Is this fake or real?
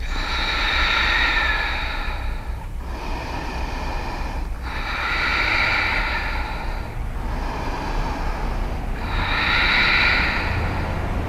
real